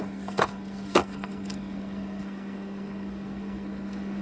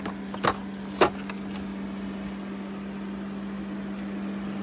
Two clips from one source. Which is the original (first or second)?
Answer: second